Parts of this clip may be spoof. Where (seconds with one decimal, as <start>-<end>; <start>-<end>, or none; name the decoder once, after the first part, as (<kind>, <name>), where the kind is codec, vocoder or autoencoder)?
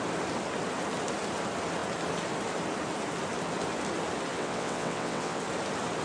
4.3-5.4 (vocoder, WaveNeXt)